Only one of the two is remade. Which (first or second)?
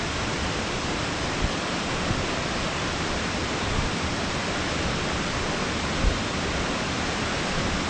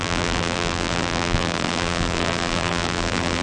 second